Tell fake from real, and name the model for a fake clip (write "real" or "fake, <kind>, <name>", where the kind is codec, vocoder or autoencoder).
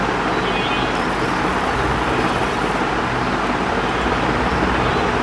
real